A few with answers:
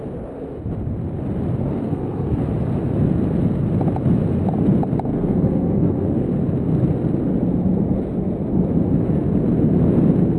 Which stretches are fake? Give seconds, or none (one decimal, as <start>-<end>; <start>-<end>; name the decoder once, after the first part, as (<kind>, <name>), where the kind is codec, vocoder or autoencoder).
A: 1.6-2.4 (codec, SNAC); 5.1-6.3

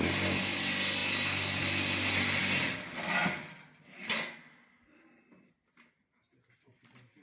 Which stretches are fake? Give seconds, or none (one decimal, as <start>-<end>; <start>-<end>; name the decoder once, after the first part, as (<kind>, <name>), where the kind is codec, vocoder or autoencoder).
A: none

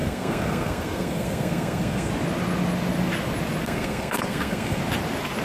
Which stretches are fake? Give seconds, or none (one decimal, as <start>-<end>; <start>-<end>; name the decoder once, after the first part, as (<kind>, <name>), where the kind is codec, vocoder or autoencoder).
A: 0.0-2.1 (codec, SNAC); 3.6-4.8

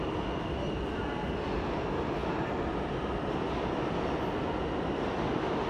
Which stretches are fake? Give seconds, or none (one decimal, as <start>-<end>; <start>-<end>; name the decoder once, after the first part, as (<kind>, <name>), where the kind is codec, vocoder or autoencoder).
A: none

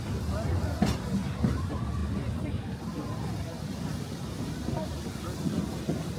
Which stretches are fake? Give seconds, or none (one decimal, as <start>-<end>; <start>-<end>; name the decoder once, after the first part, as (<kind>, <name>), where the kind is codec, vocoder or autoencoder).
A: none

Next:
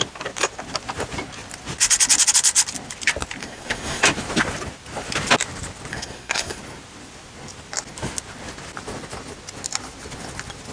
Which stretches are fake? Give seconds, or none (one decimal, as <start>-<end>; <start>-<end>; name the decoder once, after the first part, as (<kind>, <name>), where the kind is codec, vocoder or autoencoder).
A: 3.4-4.0 (codec, SNAC); 5.9-6.6

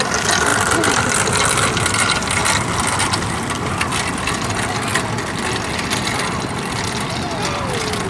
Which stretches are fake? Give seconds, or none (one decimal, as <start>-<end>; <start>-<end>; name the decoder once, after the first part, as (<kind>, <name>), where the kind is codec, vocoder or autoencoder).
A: none

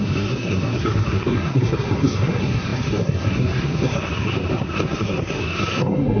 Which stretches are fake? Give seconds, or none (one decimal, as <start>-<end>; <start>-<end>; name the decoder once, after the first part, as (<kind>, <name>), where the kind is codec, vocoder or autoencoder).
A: 0.0-6.2 (codec, SNAC)